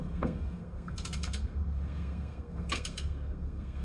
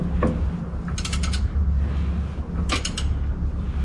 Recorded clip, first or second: second